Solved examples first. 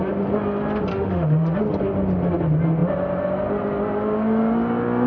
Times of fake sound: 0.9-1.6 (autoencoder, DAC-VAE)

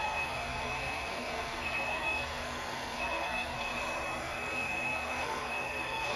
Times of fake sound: 0.0-3.7 (codec, SNAC); 4.2-6.2

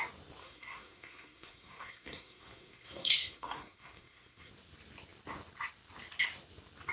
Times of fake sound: 0.4-4.5 (codec, SNAC)

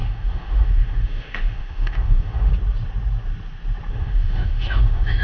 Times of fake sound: 0.0-2.5 (autoencoder, DAC-VAE); 3.9-5.2

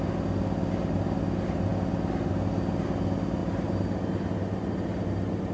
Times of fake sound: 3.4-4.0 (vocoder, BigVGAN v2)

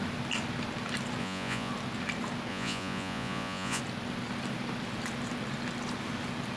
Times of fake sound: 1.2-1.7 (vocoder, Vocos); 2.5-3.8

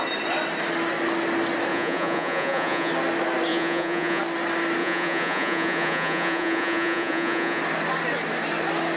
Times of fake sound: 1.7-2.9 (vocoder, Vocos); 3.5-4.2; 4.8-7.6

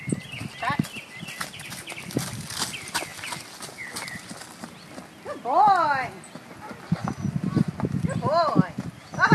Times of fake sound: none